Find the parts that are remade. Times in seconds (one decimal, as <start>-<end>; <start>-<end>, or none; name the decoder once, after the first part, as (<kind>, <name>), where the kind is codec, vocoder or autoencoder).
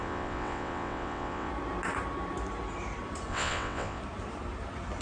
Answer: 0.0-1.5 (vocoder, WaveNeXt); 3.3-4.0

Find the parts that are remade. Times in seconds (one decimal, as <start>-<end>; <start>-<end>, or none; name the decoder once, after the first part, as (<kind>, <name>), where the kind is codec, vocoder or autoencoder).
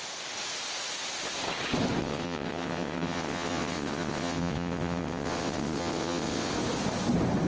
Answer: 2.0-6.5 (vocoder, WaveNeXt)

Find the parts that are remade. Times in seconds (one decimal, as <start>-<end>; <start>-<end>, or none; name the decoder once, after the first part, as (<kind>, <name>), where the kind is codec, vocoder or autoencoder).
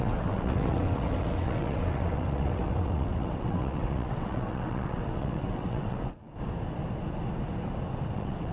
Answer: 0.0-6.3 (vocoder, WaveNeXt); 8.1-8.5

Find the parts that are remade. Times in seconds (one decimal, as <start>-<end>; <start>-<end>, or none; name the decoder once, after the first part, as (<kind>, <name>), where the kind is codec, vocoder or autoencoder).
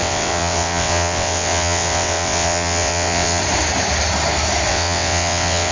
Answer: 0.0-3.4 (vocoder, WaveNeXt); 4.7-5.7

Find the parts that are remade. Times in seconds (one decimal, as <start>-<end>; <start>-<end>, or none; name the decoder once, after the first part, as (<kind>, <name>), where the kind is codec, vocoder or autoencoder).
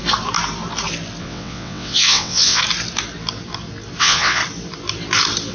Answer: 1.2-2.6 (vocoder, WaveNeXt); 4.0-4.4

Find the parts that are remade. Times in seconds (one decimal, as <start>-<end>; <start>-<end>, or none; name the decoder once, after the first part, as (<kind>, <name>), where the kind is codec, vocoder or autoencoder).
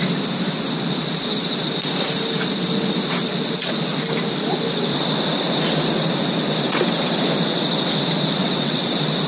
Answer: 8.4-8.9 (vocoder, WaveNeXt)